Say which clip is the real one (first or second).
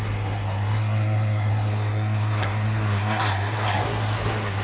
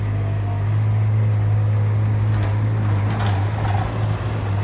second